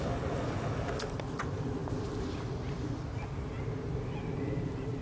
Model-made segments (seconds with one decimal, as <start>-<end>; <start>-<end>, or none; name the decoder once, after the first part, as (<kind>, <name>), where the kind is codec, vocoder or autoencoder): none